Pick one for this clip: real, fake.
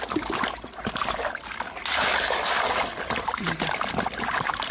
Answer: real